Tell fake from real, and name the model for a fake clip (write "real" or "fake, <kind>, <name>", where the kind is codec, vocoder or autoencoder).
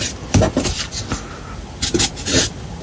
real